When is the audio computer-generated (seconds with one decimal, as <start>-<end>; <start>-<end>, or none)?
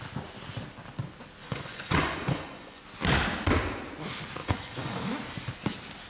1.4-2.8; 4.4-5.0